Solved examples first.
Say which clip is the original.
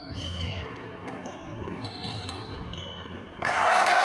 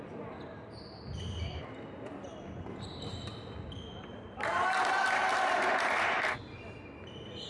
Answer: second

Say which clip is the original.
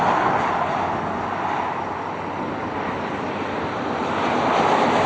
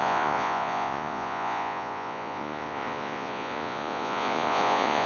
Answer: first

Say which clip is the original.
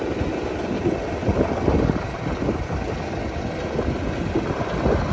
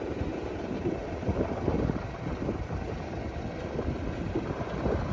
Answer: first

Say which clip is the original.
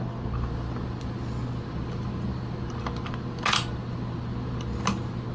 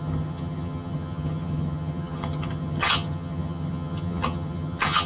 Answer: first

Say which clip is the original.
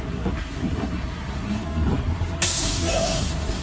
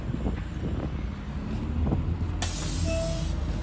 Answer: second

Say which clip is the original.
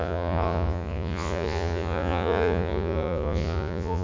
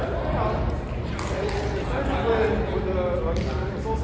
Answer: second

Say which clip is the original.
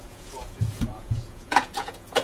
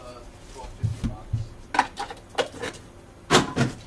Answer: second